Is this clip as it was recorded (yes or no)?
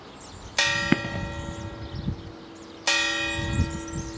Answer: yes